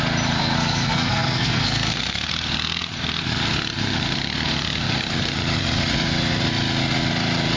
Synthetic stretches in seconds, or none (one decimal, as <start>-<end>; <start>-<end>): 0.4-2.3